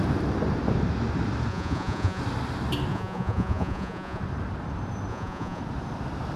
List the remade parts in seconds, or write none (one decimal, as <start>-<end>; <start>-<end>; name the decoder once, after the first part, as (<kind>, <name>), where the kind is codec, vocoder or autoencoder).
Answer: 1.5-2.2 (vocoder, Vocos); 2.9-4.2; 5.1-5.6